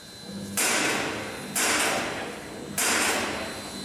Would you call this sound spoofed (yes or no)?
no